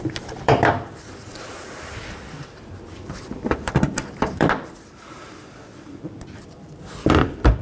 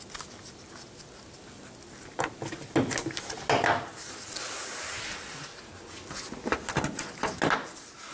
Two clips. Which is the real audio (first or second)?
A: second